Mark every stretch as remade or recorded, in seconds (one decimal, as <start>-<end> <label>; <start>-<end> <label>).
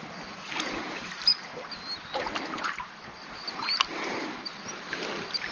0.0-5.5 recorded